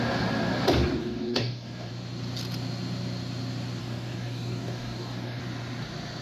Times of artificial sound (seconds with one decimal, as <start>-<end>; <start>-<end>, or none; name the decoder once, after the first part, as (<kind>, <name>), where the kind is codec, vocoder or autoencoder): 1.0-1.9 (codec, DAC); 3.8-5.4